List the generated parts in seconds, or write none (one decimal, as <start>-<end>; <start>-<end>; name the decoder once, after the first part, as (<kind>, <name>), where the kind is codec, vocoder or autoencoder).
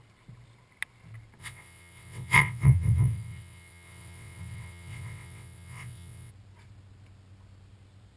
1.4-6.3 (vocoder, WaveNeXt)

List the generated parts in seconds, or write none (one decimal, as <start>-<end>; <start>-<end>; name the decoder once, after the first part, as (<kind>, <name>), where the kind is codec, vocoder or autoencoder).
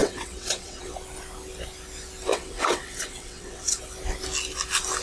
0.0-0.9 (vocoder, WaveNeXt); 2.3-3.8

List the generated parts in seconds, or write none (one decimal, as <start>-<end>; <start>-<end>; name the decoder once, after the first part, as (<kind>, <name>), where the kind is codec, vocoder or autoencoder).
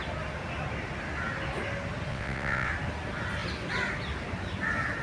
2.1-2.7 (vocoder, WaveNeXt)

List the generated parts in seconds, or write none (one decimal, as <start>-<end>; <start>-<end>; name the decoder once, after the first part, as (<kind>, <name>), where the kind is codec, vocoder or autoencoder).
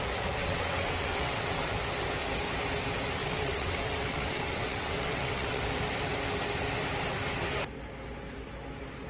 0.4-1.7 (vocoder, WaveNeXt); 3.2-5.6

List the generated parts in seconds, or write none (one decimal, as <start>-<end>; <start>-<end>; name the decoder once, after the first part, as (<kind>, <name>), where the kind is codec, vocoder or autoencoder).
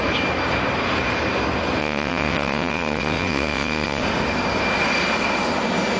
1.8-4.0 (vocoder, WaveNeXt)